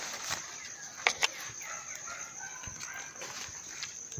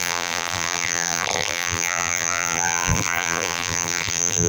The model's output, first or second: second